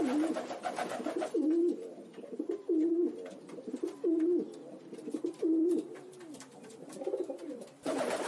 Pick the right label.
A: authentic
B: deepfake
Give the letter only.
A